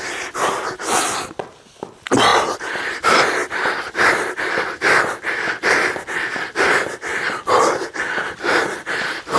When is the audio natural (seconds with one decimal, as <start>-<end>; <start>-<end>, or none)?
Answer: 0.0-9.4